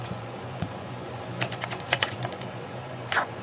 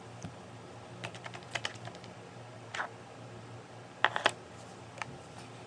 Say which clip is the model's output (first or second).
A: first